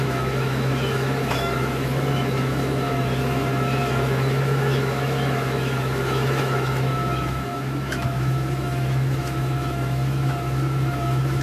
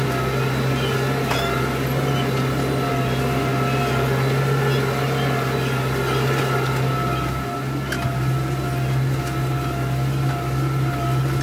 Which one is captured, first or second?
second